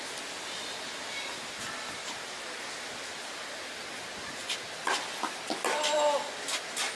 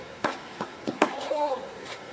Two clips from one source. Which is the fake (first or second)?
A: second